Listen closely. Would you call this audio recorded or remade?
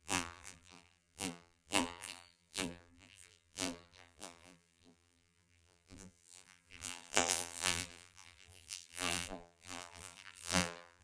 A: remade